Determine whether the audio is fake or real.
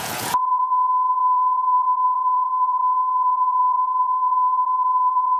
fake